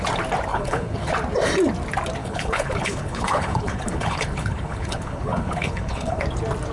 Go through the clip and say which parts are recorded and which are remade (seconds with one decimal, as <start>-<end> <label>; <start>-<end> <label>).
0.0-0.5 recorded; 0.5-1.1 remade; 1.1-2.2 recorded; 2.2-6.2 remade; 6.2-6.7 recorded